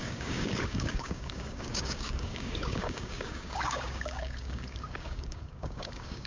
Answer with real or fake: fake